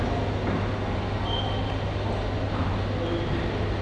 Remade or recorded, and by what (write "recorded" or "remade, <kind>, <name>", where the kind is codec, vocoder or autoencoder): recorded